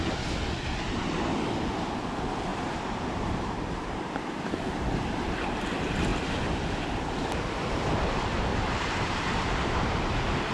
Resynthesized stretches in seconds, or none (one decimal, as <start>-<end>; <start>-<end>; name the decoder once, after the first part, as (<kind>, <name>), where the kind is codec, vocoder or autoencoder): 2.5-5.6 (vocoder, BigVGAN v2); 8.5-9.9